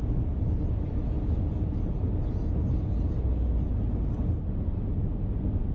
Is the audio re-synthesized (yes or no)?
no